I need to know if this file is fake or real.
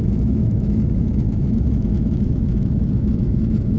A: fake